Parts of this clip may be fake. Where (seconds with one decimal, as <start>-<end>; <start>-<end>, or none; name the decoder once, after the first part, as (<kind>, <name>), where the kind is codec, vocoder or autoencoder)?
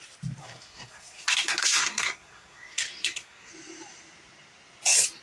0.4-3.5 (codec, SNAC)